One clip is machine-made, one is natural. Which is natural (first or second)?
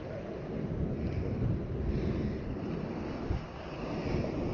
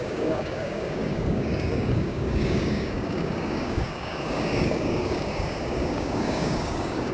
first